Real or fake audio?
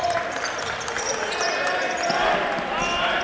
real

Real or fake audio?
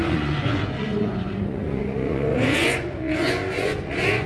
fake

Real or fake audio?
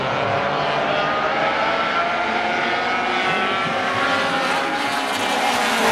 real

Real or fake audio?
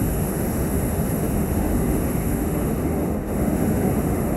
fake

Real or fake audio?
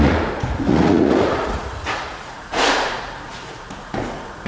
fake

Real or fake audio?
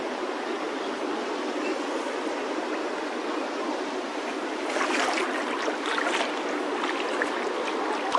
real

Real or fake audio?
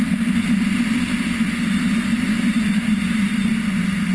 real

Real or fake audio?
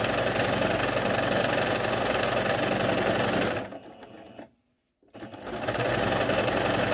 real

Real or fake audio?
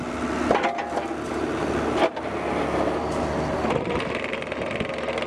real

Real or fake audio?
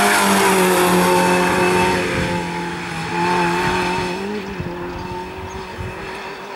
real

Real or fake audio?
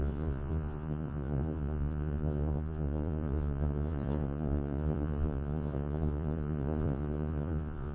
fake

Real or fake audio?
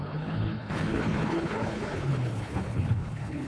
fake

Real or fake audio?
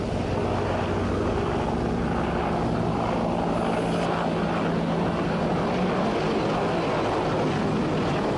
real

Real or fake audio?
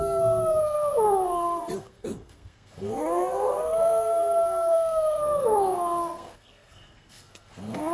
fake